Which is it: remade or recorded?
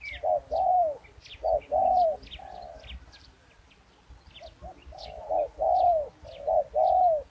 recorded